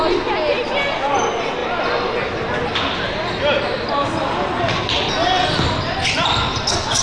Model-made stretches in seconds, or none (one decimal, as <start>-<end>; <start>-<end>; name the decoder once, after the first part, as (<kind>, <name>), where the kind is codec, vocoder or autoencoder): none